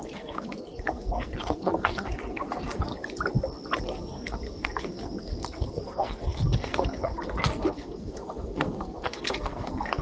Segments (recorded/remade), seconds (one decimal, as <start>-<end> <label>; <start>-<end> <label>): 0.0-2.9 remade; 2.9-3.8 recorded; 3.8-10.0 remade